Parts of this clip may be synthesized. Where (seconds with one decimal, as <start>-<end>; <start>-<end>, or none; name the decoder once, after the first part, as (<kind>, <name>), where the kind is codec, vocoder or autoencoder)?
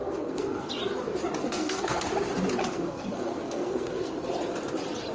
0.0-0.7 (codec, SNAC); 1.4-2.0; 2.6-4.1